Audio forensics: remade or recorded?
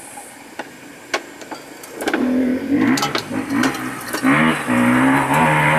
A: recorded